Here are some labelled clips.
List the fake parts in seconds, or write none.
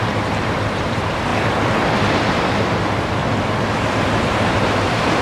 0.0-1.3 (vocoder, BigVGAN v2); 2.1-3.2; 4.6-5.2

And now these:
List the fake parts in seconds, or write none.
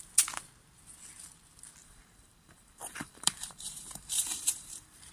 1.8-5.1 (vocoder, BigVGAN v2)